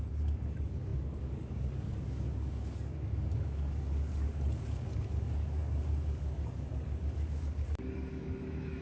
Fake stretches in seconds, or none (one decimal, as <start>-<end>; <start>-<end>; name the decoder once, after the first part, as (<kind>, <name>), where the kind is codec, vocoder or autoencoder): 0.0-8.8 (codec, DAC)